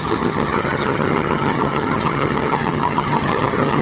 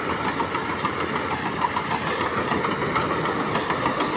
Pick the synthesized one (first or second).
first